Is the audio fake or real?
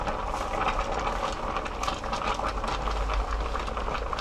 real